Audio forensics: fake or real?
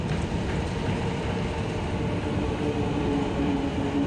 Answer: real